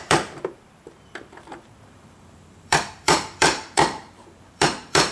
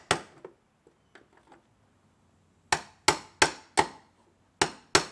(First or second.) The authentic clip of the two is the second